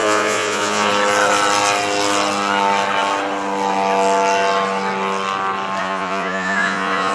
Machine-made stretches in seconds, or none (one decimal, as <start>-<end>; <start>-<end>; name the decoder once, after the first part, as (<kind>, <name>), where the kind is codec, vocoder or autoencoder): 0.0-0.9 (vocoder, Vocos); 5.8-7.1